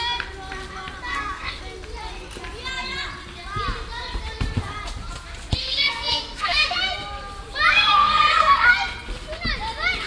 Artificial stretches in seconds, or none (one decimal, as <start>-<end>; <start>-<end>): 1.1-1.6; 5.6-6.9; 7.7-8.7

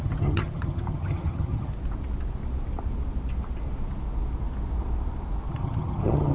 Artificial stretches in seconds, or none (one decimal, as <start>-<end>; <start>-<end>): 0.0-1.7; 5.5-6.3

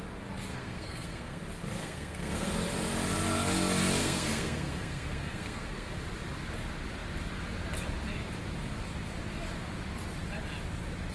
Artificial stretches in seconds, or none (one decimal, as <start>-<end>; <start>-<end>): 0.5-1.4; 1.8-2.5; 4.0-5.9

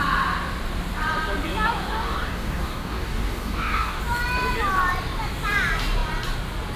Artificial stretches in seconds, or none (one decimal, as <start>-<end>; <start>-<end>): 1.9-4.0

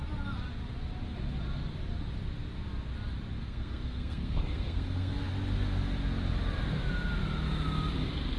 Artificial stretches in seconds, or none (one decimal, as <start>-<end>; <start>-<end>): 3.4-5.3

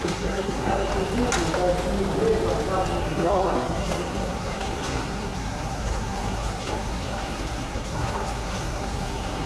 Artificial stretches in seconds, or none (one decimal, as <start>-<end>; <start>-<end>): 0.0-0.9; 3.0-9.5